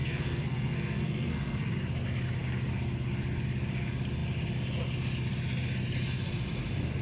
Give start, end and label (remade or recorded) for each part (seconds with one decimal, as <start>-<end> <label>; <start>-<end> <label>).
0.0-1.7 remade; 1.7-7.0 recorded